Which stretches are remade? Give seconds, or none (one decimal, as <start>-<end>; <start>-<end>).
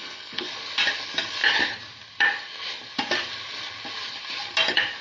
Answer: 0.0-0.5